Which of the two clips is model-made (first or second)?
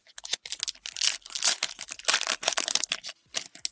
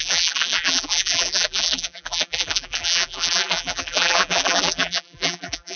second